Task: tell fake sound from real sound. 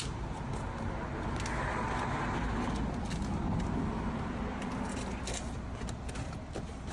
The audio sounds real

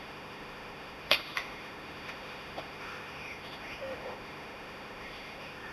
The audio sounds fake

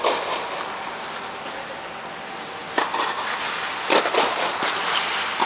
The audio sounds real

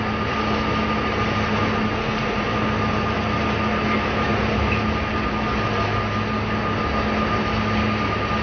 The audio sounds real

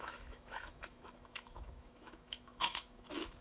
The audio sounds fake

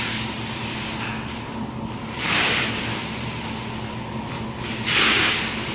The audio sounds real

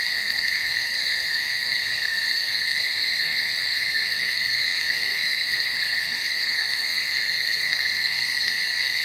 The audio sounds fake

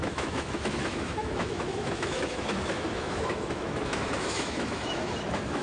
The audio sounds fake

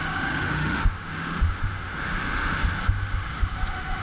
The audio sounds fake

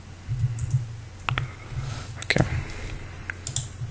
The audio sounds real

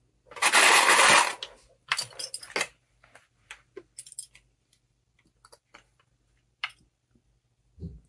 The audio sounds real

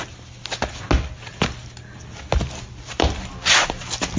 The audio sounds real